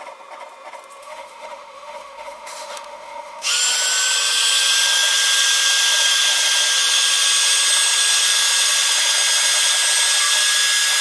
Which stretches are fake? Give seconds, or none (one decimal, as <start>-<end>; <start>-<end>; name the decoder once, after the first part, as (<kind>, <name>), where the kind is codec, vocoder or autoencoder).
1.0-3.5 (autoencoder, DAC-VAE)